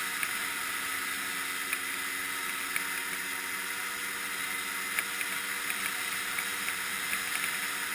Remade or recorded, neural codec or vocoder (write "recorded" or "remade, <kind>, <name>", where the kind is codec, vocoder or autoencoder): recorded